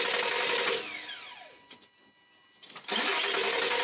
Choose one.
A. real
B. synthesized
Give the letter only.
A